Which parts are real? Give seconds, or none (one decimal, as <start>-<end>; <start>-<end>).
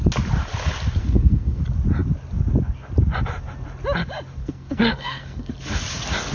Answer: 0.0-1.0; 1.6-4.4; 5.5-6.3